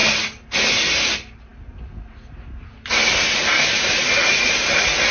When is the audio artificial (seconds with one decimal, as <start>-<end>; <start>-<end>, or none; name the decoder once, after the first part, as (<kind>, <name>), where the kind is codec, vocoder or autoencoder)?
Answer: none